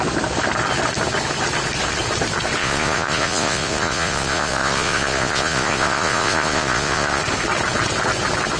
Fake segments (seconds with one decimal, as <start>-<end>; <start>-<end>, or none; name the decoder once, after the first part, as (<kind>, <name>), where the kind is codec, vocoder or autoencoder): 2.6-7.2 (vocoder, Vocos)